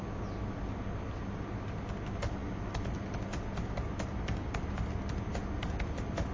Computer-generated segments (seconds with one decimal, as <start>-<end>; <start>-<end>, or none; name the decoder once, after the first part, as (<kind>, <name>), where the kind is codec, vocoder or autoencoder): none